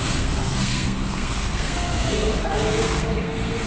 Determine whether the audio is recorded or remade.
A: remade